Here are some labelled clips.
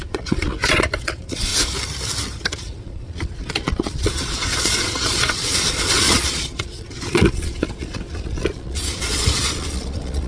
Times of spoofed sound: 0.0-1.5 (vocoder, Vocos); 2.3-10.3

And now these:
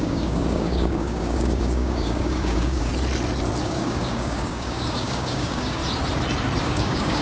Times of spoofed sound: 0.0-2.9 (codec, DAC); 3.6-5.8; 6.6-7.2

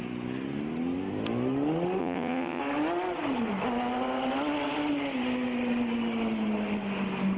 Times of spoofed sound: 2.0-2.6 (vocoder, HiFi-GAN)

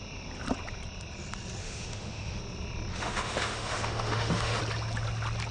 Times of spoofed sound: 1.6-2.4 (autoencoder, DAC-VAE); 2.9-4.6

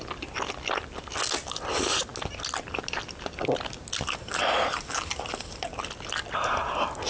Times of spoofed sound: none